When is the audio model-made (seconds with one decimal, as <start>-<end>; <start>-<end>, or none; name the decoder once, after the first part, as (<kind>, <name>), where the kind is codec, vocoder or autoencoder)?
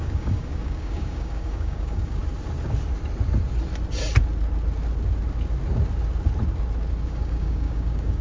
0.0-2.2 (codec, DAC); 7.1-8.2